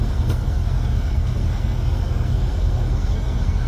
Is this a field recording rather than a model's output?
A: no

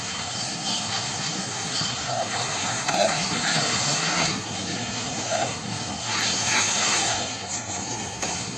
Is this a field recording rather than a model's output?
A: no